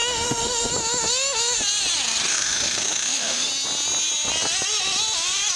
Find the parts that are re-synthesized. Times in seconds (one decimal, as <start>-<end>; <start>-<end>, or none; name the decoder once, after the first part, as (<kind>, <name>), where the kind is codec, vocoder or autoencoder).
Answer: 0.0-0.7 (autoencoder, DAC-VAE); 2.3-3.5